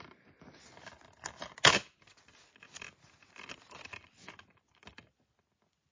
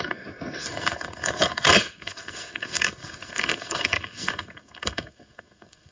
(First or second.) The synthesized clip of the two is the second